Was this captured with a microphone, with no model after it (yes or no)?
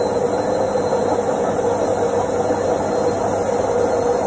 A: yes